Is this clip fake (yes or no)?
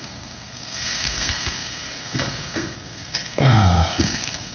yes